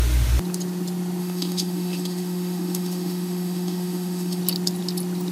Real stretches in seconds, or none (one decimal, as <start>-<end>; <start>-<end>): 0.0-1.2; 4.4-5.3